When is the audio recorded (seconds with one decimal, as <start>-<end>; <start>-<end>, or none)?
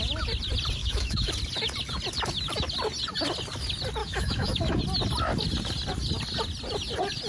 0.0-0.8; 1.3-4.0; 4.8-7.3